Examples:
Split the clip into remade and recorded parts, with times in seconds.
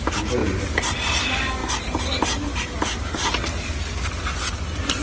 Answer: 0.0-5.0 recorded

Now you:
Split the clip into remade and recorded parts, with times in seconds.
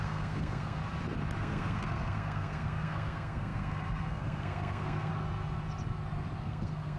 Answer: 0.0-0.8 remade; 0.8-1.4 recorded; 1.4-5.1 remade; 5.1-6.4 recorded; 6.4-7.0 remade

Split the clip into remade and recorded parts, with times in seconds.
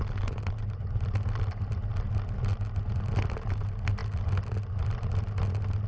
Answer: 0.0-5.9 recorded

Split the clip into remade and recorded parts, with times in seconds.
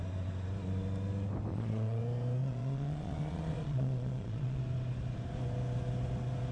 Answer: 0.0-1.5 recorded; 1.5-2.0 remade; 2.0-2.4 recorded; 2.4-4.6 remade; 4.6-6.5 recorded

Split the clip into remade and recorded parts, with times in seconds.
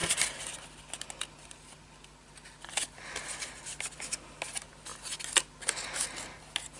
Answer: 0.0-6.8 recorded